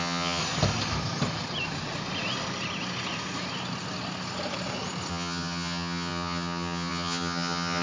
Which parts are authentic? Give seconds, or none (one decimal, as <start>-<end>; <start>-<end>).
0.4-5.1